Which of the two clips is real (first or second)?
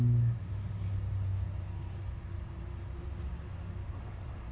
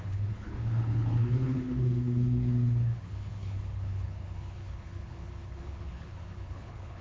first